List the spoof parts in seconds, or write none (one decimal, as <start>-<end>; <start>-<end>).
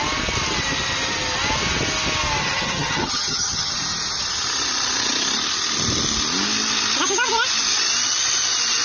2.4-3.7